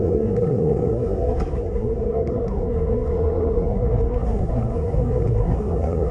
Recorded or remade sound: remade